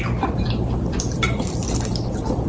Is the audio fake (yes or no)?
yes